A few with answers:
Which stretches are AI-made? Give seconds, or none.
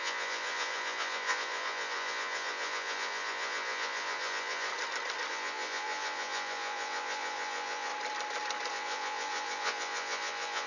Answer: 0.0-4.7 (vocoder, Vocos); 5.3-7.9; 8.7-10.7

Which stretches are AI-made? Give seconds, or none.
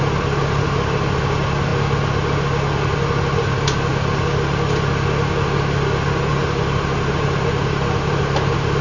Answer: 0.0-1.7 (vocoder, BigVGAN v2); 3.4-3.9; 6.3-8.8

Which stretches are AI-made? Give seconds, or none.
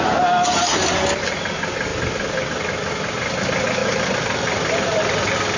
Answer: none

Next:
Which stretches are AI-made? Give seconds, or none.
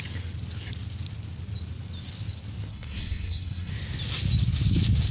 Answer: 2.7-3.7 (codec, SNAC)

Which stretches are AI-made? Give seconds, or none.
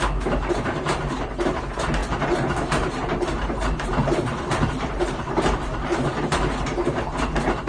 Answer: 2.0-6.6 (vocoder, BigVGAN v2)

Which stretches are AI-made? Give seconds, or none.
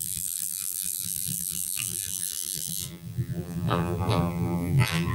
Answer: 0.0-5.1 (vocoder, BigVGAN v2)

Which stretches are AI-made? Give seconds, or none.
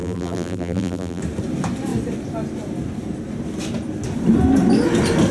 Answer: 0.0-1.2 (vocoder, BigVGAN v2)